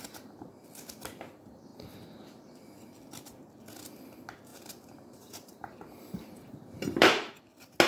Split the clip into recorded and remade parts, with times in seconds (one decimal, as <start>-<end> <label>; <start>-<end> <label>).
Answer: 0.0-4.5 recorded; 4.5-7.4 remade; 7.4-7.9 recorded